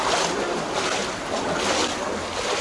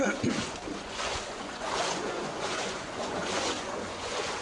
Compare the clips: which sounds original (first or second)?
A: first